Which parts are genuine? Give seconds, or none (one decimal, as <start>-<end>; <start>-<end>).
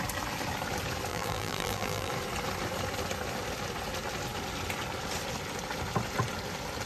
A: 0.0-1.1; 2.1-6.9